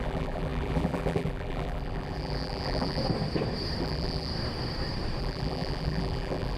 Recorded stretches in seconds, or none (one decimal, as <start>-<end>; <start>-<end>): 3.0-3.8; 4.3-5.2